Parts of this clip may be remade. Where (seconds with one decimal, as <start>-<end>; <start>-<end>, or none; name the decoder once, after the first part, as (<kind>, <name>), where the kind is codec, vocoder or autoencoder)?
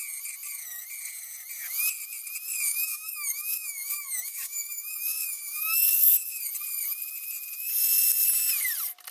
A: 2.7-6.4 (autoencoder, DAC-VAE)